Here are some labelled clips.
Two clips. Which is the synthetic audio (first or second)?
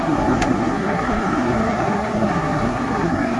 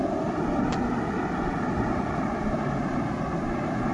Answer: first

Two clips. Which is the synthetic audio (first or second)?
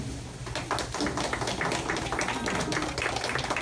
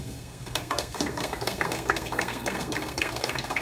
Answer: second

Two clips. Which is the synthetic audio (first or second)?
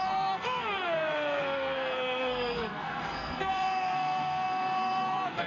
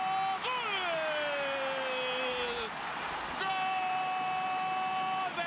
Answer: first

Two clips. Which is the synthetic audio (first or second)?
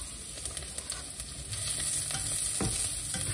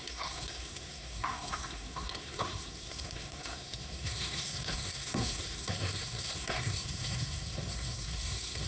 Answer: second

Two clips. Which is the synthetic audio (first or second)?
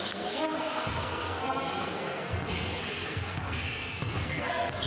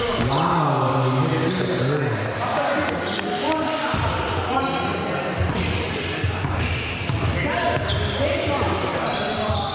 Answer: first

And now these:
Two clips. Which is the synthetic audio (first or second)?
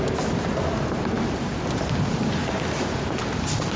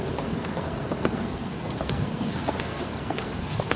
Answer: second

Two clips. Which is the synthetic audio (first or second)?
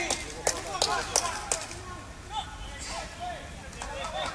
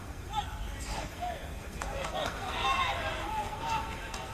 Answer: second